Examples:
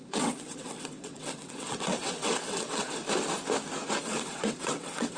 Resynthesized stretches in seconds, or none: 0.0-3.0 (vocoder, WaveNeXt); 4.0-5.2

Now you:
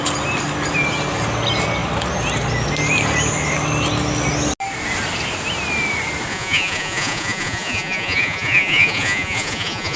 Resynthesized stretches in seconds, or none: 6.3-10.0 (vocoder, Vocos)

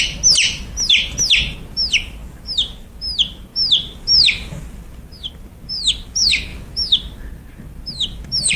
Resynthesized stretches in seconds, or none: none

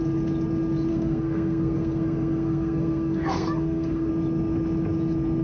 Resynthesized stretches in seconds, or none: 0.9-4.1 (codec, SNAC)

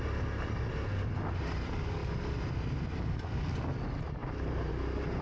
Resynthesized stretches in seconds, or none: none

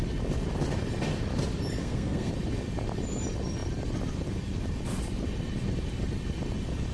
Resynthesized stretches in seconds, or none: 1.8-2.3 (codec, SNAC)